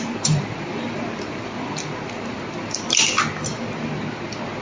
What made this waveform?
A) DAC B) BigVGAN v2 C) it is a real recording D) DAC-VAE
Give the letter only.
B